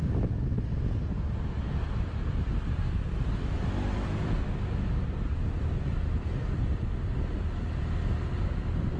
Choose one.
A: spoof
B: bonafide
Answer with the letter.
B